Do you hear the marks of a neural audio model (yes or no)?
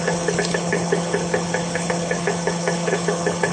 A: yes